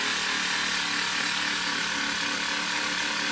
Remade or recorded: recorded